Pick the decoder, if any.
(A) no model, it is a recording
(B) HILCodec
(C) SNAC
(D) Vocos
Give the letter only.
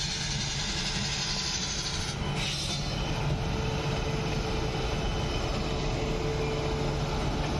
A